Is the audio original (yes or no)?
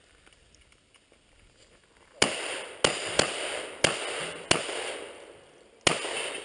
yes